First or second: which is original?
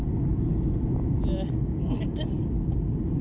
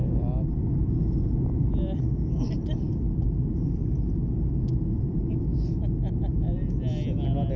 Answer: second